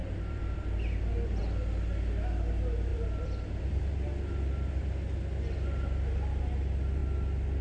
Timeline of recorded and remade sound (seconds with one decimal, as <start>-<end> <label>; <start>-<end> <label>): 0.0-1.4 remade; 1.4-2.9 recorded; 2.9-3.8 remade; 3.8-7.0 recorded; 7.0-7.6 remade